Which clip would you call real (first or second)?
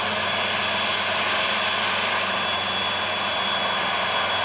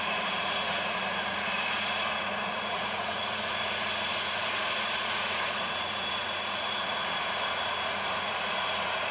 first